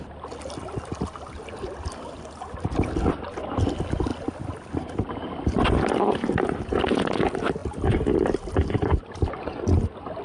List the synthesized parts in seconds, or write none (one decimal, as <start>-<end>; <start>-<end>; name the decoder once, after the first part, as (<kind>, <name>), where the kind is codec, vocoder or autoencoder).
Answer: 7.6-9.1 (vocoder, BigVGAN v2)